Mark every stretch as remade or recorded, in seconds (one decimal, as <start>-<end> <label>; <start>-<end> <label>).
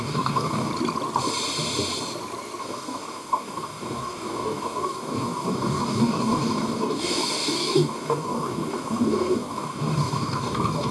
0.0-0.7 remade; 0.7-2.6 recorded; 2.6-10.9 remade